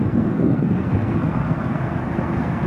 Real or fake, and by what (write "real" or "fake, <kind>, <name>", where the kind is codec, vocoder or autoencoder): fake, codec, SNAC